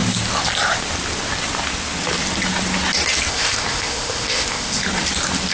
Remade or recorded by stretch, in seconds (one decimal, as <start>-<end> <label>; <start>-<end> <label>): 0.0-3.3 recorded; 3.3-4.8 remade; 4.8-5.5 recorded